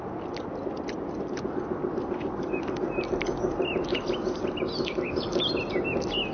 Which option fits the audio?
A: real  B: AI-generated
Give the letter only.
A